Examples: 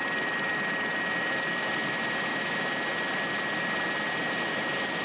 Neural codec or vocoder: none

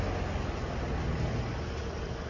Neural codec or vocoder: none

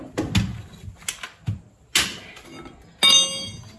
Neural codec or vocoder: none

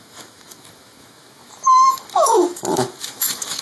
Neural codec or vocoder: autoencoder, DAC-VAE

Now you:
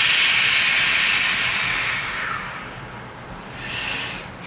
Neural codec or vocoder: none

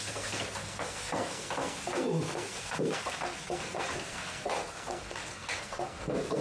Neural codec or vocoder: codec, SNAC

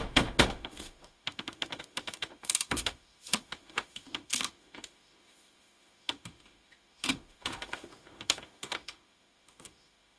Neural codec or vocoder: autoencoder, DAC-VAE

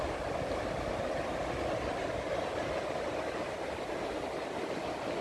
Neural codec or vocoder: none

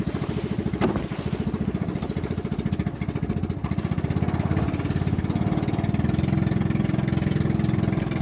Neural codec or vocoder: none